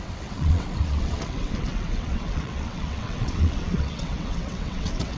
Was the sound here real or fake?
fake